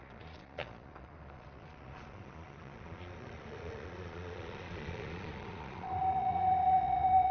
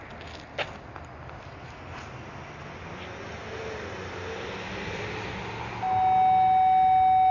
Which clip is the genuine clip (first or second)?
second